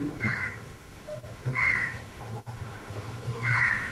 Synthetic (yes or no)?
yes